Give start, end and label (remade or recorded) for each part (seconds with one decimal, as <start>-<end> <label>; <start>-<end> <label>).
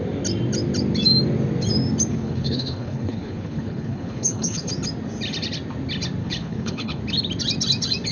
0.0-2.1 recorded; 2.1-4.7 remade; 4.7-6.2 recorded; 6.2-7.0 remade; 7.0-8.1 recorded